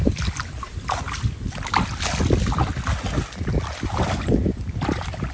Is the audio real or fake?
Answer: real